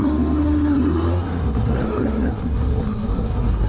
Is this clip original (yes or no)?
no